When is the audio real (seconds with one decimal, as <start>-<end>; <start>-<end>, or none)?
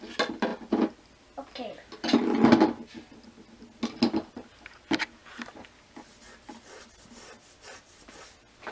0.0-8.7